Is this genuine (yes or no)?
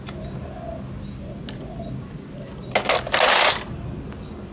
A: yes